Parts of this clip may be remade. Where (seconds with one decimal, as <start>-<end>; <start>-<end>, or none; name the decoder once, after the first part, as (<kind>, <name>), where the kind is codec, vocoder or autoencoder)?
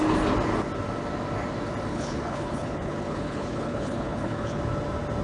1.9-4.6 (codec, HILCodec)